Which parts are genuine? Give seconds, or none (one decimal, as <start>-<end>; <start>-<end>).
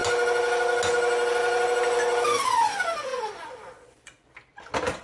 0.0-3.1; 4.3-5.0